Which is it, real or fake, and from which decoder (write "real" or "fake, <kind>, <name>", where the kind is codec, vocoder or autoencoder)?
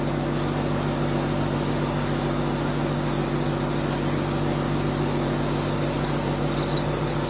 real